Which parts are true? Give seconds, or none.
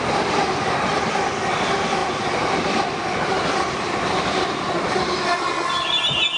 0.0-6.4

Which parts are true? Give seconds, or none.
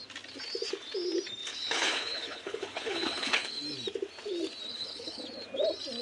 0.0-1.4; 3.6-4.7; 5.2-6.0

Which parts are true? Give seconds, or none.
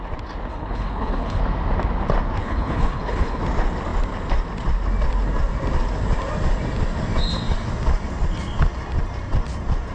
0.0-0.5; 1.4-2.4; 3.4-9.9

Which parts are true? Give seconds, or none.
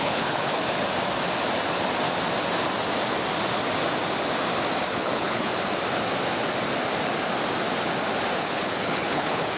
0.6-4.9; 5.5-8.4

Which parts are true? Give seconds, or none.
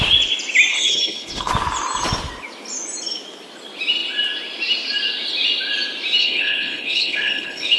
0.0-0.7; 1.5-6.2